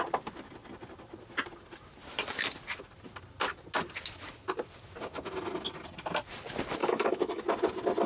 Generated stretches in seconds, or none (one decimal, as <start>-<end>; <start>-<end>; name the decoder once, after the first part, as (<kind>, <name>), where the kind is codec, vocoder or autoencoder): 6.8-7.4 (codec, DAC)